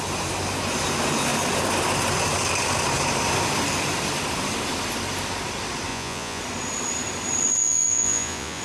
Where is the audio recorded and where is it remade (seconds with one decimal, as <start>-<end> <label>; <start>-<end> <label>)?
0.0-5.9 recorded; 5.9-6.4 remade; 6.4-7.6 recorded; 7.6-8.6 remade